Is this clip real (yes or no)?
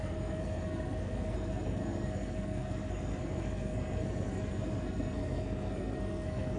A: no